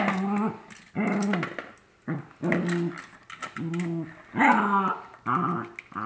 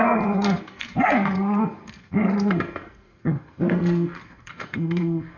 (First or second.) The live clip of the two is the first